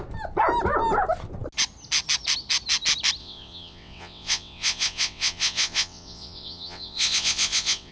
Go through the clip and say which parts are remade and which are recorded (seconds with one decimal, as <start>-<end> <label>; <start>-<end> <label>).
0.0-3.2 recorded; 3.2-7.9 remade